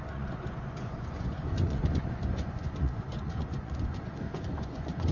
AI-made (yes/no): yes